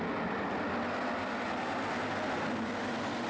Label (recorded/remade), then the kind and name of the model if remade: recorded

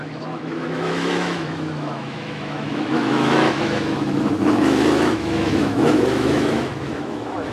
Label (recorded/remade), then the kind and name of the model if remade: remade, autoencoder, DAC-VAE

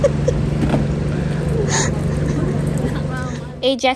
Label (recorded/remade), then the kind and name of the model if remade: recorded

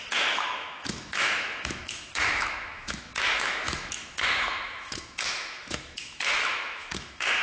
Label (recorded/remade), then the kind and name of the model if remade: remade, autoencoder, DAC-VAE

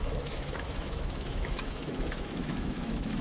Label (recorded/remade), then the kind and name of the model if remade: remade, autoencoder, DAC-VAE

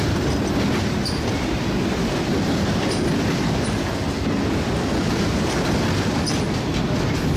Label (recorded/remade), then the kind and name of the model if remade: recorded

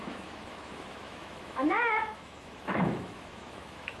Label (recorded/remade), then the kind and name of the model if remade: remade, autoencoder, DAC-VAE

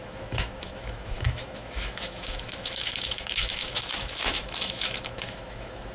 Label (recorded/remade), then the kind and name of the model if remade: remade, autoencoder, DAC-VAE